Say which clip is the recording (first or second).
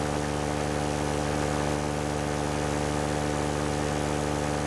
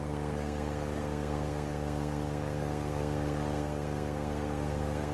first